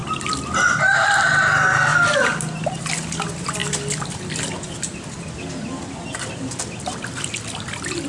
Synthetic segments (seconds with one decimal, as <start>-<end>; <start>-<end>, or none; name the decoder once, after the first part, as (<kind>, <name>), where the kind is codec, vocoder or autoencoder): 0.0-1.4 (vocoder, BigVGAN v2); 3.6-6.6